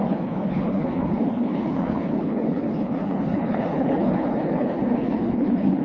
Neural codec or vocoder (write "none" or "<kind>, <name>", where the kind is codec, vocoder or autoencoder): codec, HILCodec